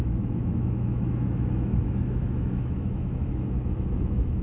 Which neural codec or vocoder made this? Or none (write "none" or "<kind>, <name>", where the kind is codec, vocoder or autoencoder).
autoencoder, DAC-VAE